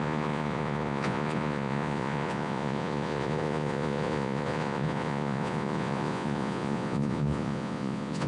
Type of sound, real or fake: fake